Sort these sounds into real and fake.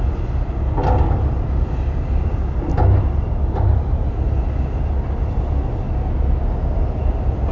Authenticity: real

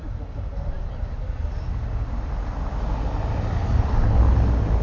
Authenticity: real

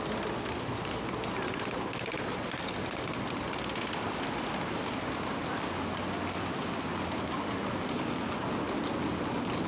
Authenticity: real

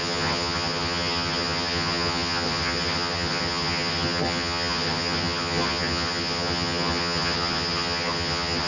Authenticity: fake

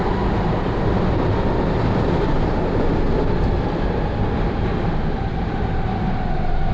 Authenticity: real